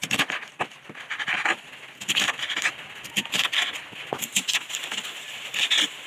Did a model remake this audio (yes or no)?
no